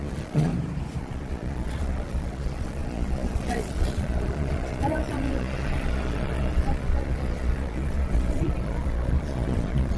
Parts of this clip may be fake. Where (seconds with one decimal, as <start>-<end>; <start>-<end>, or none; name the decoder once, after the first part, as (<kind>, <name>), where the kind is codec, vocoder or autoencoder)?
0.0-0.5 (vocoder, Vocos); 1.0-10.0